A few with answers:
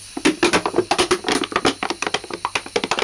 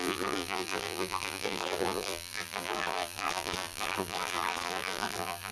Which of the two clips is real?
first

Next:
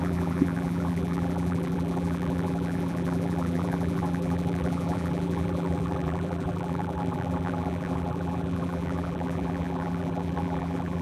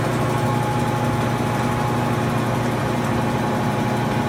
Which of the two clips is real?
second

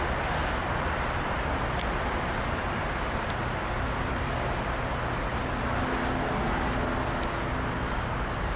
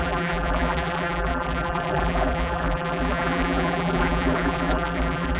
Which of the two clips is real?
first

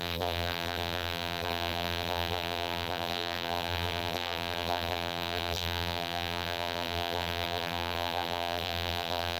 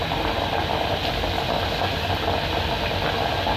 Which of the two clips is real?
second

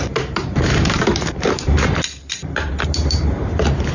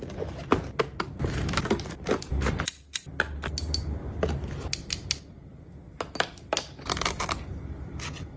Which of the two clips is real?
second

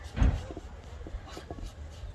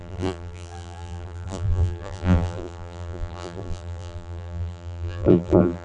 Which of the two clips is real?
first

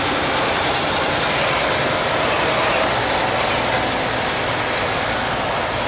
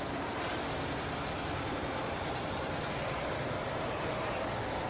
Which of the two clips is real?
first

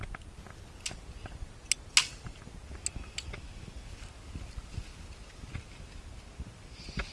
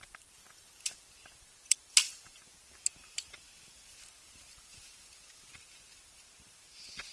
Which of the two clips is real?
first